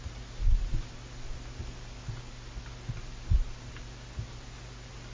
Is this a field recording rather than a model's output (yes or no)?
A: yes